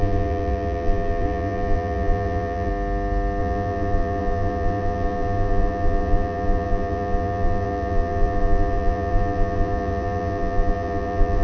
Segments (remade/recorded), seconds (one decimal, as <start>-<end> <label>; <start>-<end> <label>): 0.0-2.7 remade; 2.7-3.4 recorded; 3.4-11.4 remade